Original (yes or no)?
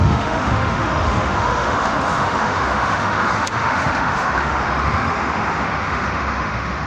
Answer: no